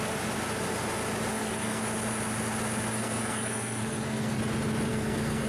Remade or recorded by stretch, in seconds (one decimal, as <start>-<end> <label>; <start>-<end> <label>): 0.0-1.3 recorded; 1.3-1.8 remade; 1.8-2.9 recorded; 2.9-4.4 remade; 4.4-4.9 recorded; 4.9-5.5 remade